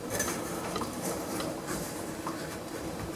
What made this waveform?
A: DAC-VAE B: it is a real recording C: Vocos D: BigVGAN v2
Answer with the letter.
D